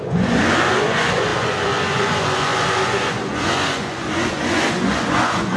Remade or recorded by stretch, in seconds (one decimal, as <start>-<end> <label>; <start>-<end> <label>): 0.0-5.6 remade